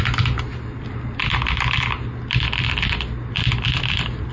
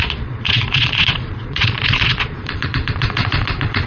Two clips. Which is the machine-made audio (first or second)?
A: second